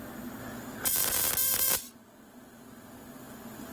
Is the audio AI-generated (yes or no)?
no